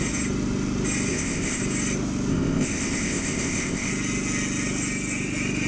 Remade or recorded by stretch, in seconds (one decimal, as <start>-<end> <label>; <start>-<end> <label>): 0.0-1.1 recorded; 1.1-1.6 remade; 1.6-2.3 recorded; 2.3-3.9 remade; 3.9-5.7 recorded